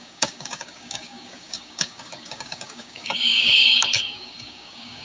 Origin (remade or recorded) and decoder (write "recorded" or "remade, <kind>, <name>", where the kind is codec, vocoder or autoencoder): remade, codec, DAC